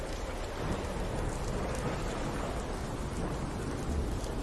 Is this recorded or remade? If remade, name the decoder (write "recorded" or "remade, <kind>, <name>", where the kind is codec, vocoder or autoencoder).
recorded